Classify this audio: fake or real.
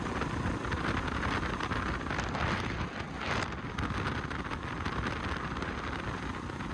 real